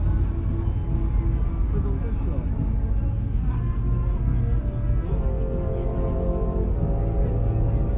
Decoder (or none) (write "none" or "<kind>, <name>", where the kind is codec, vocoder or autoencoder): none